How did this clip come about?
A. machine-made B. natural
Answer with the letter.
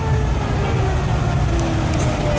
B